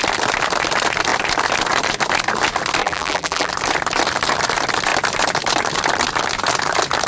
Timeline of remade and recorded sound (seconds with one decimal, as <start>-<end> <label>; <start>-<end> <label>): 0.0-2.8 recorded; 2.8-3.5 remade; 3.5-7.1 recorded